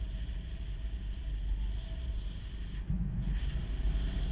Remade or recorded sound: recorded